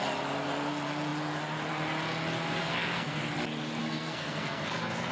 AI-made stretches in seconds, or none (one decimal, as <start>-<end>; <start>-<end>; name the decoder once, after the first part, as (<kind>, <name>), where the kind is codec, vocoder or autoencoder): 2.6-3.2 (codec, SNAC); 3.8-5.1